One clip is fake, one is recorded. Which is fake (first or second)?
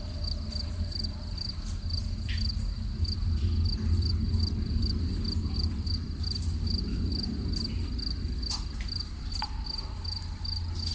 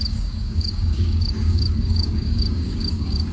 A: second